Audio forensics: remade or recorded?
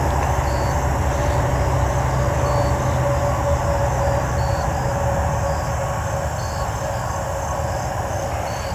recorded